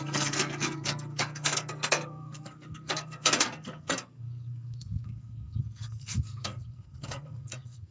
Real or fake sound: fake